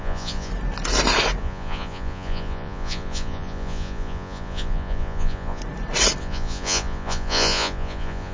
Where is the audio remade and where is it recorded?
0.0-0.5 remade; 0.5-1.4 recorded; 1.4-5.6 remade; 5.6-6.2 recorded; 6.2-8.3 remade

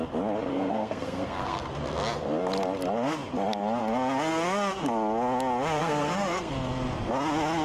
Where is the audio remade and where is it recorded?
0.0-0.5 recorded; 0.5-1.7 remade; 1.7-5.8 recorded; 5.8-6.5 remade; 6.5-7.6 recorded

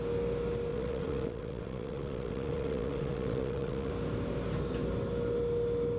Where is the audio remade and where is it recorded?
0.0-0.7 recorded; 0.7-3.9 remade; 3.9-6.0 recorded

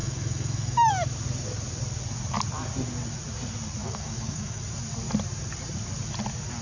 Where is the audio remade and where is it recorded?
0.0-0.9 remade; 0.9-3.8 recorded; 3.8-4.6 remade; 4.6-6.6 recorded

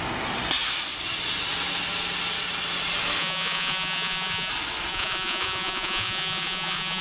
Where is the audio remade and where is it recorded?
0.0-3.2 recorded; 3.2-4.5 remade; 4.5-4.9 recorded; 4.9-7.0 remade

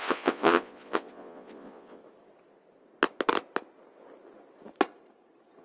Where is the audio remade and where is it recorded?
0.0-2.0 remade; 2.0-5.6 recorded

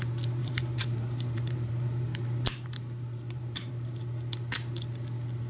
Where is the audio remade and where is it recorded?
0.0-0.4 recorded; 0.4-3.7 remade; 3.7-5.5 recorded

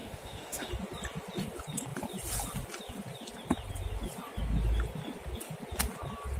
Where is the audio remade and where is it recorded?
0.0-0.7 remade; 0.7-6.4 recorded